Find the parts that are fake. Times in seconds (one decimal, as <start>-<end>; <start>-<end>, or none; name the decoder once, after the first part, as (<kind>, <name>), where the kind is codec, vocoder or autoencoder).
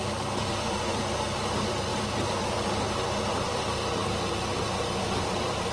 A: 0.0-5.7 (vocoder, BigVGAN v2)